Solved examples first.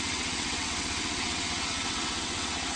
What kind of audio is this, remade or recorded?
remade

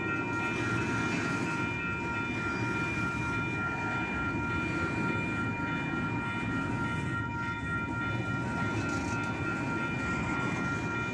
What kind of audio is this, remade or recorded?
recorded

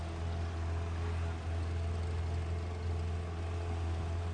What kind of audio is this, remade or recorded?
recorded